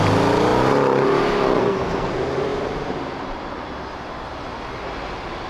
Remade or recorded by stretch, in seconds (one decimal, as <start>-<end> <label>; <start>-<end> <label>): 0.0-1.6 recorded; 1.6-2.1 remade; 2.1-5.5 recorded